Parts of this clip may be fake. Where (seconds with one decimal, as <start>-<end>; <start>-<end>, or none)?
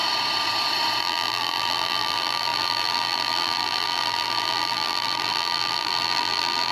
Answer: 1.0-6.7